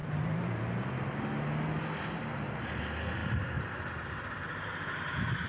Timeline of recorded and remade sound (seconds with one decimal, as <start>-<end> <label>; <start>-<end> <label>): 0.0-0.9 remade; 0.9-2.3 recorded; 2.3-2.8 remade; 2.8-5.5 recorded